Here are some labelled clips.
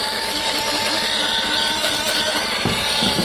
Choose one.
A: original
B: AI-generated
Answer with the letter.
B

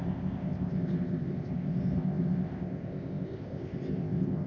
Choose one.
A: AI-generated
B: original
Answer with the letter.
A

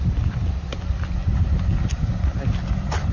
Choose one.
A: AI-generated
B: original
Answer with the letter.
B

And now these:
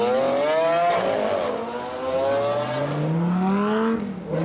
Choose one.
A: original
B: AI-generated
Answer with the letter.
A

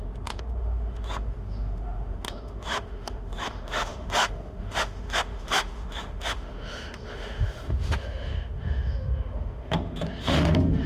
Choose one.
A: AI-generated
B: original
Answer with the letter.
A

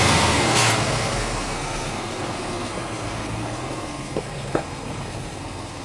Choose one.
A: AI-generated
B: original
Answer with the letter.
A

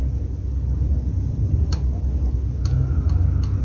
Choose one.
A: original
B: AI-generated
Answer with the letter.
A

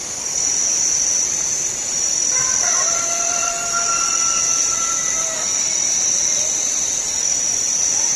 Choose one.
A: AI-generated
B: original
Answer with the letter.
A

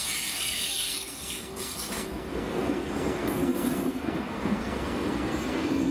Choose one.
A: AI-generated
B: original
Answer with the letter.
A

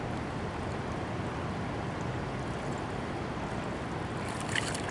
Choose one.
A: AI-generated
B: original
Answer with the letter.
B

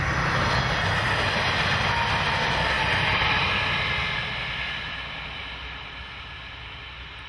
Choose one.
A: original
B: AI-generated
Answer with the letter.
A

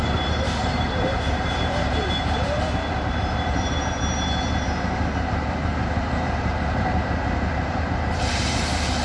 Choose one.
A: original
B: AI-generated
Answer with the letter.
B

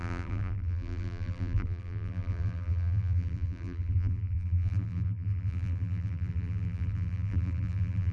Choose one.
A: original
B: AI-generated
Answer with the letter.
B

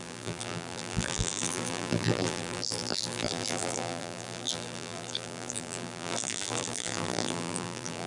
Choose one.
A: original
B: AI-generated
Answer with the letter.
B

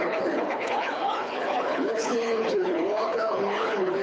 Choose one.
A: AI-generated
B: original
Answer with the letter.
A